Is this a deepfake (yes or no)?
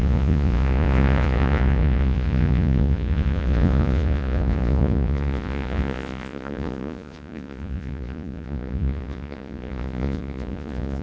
yes